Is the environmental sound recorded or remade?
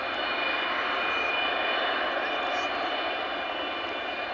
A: recorded